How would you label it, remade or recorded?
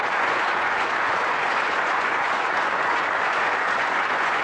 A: remade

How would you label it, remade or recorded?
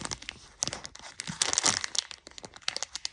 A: recorded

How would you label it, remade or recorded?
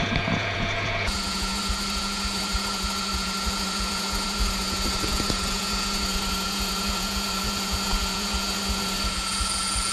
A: remade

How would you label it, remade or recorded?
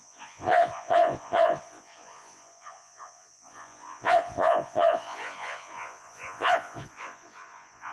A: remade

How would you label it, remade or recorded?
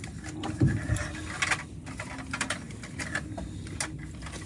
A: recorded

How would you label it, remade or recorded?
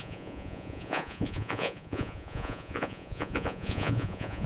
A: remade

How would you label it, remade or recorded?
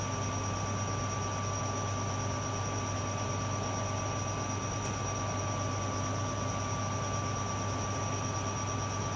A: recorded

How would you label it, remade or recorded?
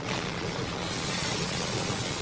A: remade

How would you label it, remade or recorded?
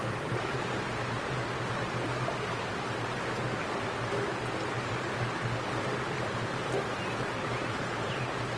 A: recorded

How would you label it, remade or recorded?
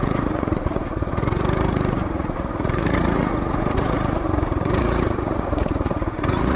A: remade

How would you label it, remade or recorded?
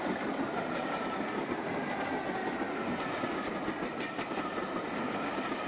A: recorded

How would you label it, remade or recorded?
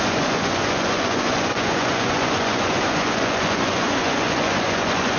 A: remade